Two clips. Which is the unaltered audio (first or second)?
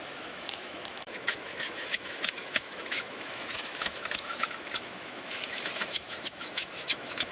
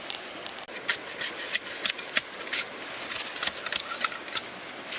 second